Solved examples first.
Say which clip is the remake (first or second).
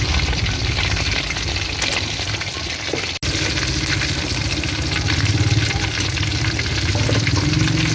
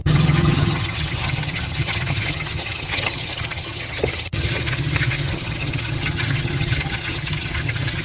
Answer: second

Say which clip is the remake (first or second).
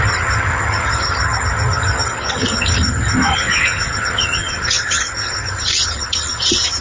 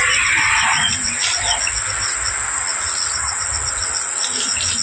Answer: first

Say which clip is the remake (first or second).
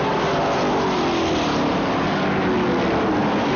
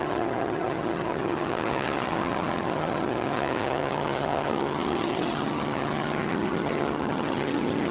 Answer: second